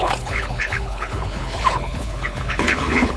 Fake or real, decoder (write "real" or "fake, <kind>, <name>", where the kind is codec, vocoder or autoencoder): fake, codec, HILCodec